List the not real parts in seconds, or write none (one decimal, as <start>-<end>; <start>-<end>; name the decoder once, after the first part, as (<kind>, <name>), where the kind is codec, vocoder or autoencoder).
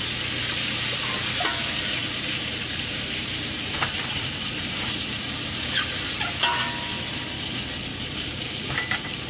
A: 2.0-6.4 (vocoder, BigVGAN v2); 7.9-9.3